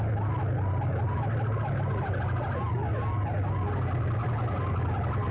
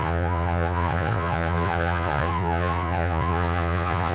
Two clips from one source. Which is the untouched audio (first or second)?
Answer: first